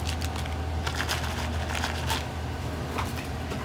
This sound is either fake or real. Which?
real